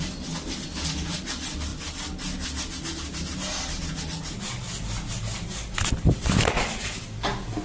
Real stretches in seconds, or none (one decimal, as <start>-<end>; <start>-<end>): 1.7-5.9